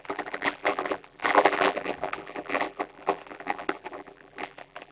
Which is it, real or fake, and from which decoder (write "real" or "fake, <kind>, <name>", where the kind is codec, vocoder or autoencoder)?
fake, vocoder, BigVGAN v2